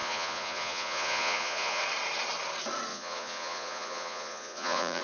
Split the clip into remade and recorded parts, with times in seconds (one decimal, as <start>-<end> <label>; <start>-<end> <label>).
0.0-1.8 remade; 1.8-2.9 recorded; 2.9-5.0 remade

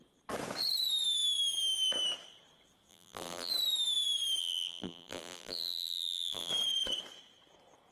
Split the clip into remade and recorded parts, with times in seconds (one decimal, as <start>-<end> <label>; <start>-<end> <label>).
0.0-2.9 recorded; 2.9-3.5 remade; 3.5-4.4 recorded; 4.4-6.5 remade; 6.5-7.9 recorded